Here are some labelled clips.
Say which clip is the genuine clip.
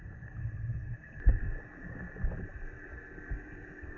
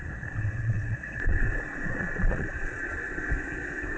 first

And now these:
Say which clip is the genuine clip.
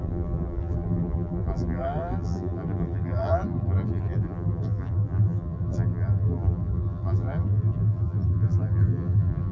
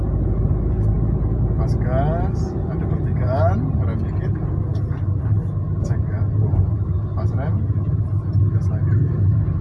second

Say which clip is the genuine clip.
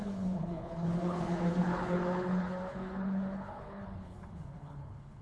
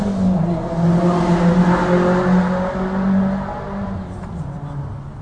second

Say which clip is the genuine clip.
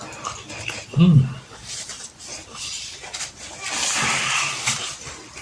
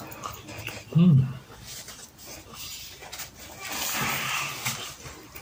second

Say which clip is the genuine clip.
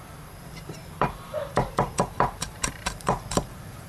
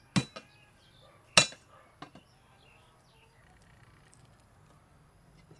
second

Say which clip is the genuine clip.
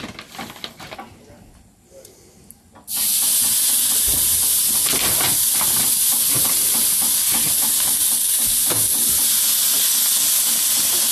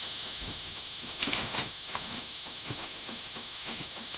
first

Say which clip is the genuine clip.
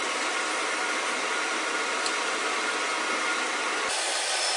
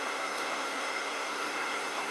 first